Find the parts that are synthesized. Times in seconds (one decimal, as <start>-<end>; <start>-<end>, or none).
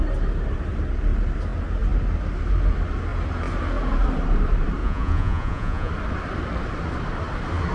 4.8-5.9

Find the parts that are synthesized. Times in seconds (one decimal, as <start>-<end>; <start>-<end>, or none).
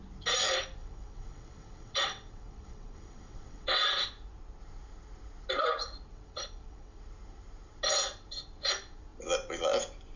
0.8-3.8; 6.1-7.0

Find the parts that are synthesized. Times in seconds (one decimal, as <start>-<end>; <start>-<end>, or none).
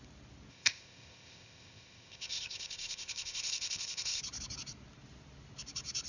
0.5-4.2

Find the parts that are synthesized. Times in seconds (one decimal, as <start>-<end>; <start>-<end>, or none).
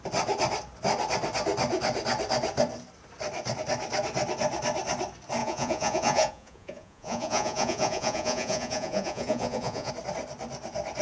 5.4-9.9